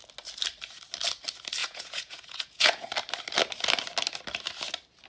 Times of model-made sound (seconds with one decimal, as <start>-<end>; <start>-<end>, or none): 1.6-2.9